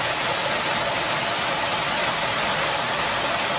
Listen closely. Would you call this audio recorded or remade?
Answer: recorded